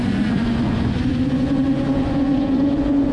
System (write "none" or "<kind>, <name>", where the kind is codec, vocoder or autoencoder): vocoder, Vocos